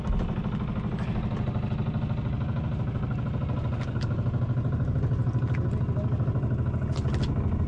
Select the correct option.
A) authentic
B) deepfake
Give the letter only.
A